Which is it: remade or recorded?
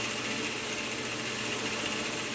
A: recorded